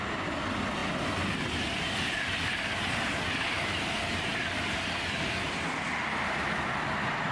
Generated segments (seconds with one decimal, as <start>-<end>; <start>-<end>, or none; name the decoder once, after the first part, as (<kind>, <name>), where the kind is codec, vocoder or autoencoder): none